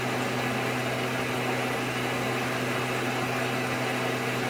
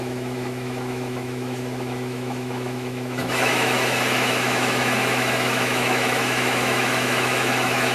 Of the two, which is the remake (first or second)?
second